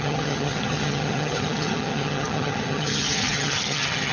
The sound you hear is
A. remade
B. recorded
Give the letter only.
A